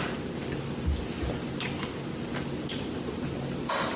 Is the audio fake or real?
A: real